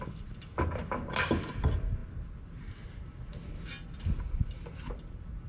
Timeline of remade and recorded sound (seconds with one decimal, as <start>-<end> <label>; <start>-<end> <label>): 0.0-5.5 recorded